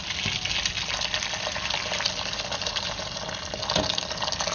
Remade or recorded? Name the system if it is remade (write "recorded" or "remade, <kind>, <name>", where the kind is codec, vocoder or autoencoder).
recorded